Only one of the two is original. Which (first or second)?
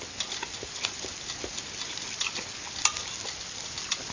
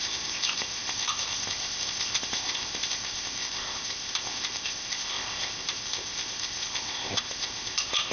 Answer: first